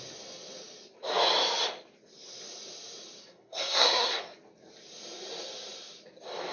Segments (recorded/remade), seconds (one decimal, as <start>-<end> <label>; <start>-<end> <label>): 0.0-3.2 recorded; 3.2-4.2 remade; 4.2-6.5 recorded